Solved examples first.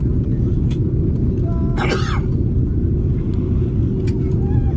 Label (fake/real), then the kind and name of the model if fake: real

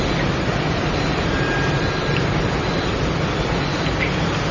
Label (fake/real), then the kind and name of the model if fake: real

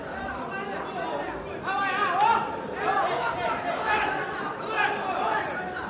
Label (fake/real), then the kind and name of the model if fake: real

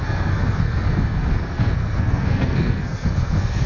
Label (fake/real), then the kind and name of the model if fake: fake, codec, SNAC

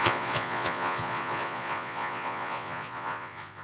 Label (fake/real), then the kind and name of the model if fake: fake, vocoder, Vocos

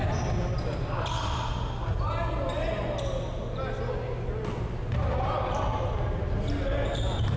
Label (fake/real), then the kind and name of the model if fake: real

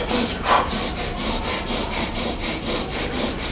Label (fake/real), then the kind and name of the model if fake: real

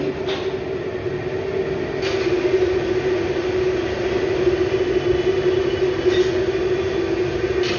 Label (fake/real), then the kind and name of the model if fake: real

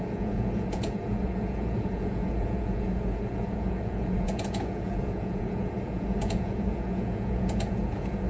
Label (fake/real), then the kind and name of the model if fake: fake, vocoder, Vocos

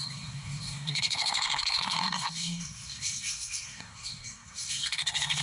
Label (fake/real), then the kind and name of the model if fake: fake, codec, SNAC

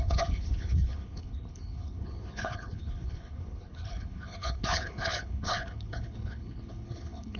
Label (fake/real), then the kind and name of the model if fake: fake, codec, HILCodec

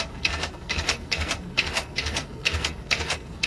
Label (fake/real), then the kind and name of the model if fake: fake, codec, SNAC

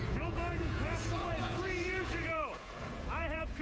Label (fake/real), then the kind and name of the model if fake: fake, vocoder, Vocos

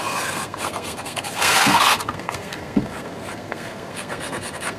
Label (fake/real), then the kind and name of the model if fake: fake, codec, SNAC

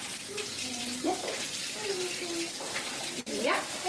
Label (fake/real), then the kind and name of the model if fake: real